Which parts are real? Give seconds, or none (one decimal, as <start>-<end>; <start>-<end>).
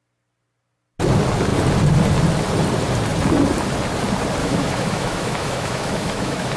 0.0-4.4